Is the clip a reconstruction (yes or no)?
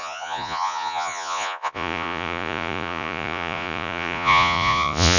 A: yes